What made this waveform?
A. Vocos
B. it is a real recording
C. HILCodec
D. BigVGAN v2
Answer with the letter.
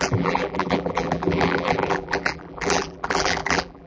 D